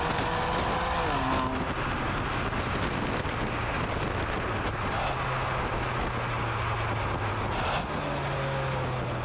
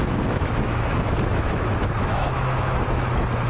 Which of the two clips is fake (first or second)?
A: second